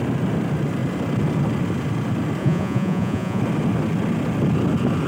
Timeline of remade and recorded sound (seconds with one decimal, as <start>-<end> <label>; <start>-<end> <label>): 0.0-2.4 recorded; 2.4-3.4 remade; 3.4-5.1 recorded